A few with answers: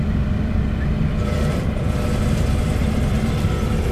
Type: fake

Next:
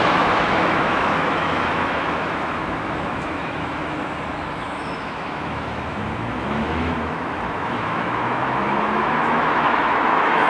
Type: fake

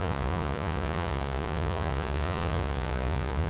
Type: fake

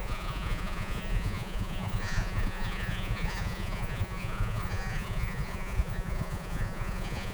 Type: fake